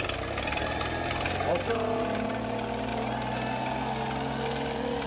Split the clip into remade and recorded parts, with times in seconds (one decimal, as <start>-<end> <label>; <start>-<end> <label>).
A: 0.0-5.1 recorded